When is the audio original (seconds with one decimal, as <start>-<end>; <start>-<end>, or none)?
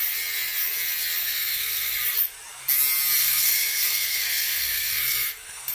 0.0-1.2; 1.9-3.2